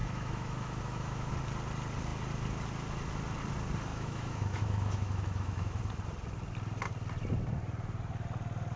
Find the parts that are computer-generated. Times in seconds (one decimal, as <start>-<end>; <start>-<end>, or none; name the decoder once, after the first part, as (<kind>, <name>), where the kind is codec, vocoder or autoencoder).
0.0-1.3 (autoencoder, DAC-VAE); 3.9-5.8

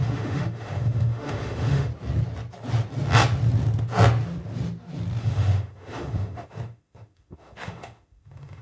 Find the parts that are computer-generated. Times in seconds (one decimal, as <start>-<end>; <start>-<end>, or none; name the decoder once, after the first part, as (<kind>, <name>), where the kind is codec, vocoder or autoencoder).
0.0-1.9 (autoencoder, DAC-VAE); 5.2-8.6

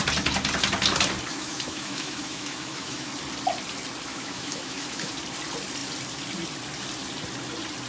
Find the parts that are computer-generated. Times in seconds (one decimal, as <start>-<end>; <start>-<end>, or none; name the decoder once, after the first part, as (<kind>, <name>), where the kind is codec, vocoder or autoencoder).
1.3-3.1 (autoencoder, DAC-VAE); 4.1-5.1

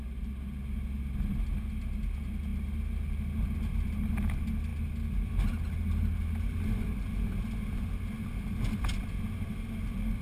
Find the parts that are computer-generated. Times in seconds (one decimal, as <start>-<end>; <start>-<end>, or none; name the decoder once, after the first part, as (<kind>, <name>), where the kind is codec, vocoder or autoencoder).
none

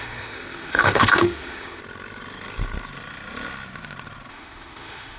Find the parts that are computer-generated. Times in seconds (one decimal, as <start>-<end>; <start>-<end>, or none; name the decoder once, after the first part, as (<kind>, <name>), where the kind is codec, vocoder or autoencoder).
0.0-1.8 (autoencoder, DAC-VAE); 4.3-5.2

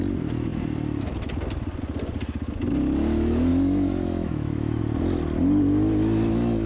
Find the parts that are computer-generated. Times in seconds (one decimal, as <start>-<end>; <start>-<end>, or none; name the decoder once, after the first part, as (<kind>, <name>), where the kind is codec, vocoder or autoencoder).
3.5-4.8 (autoencoder, DAC-VAE)

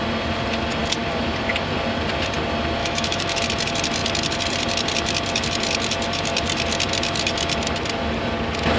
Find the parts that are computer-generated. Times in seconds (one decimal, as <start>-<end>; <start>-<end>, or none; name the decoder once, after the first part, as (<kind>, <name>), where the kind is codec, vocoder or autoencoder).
2.8-3.4 (autoencoder, DAC-VAE)